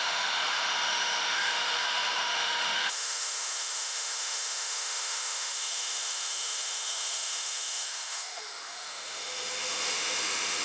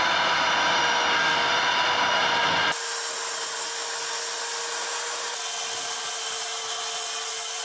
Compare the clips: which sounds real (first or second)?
second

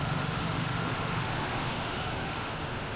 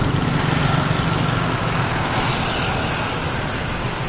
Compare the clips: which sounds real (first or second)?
second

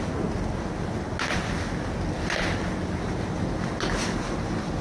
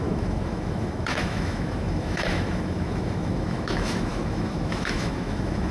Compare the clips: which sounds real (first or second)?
first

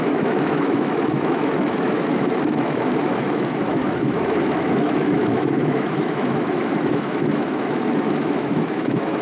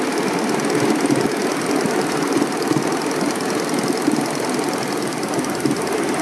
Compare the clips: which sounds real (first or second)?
second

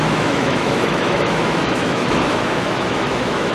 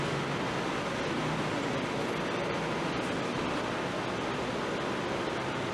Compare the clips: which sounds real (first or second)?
second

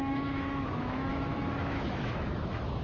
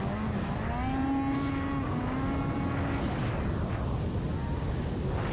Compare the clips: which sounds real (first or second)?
second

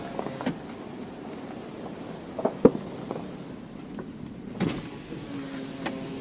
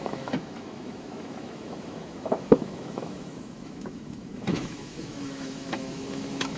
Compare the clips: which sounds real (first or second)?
first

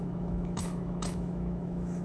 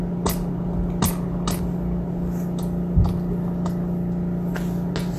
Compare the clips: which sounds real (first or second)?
second